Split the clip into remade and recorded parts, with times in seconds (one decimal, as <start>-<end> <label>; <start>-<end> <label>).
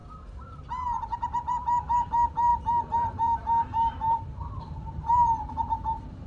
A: 0.0-1.0 recorded; 1.0-6.3 remade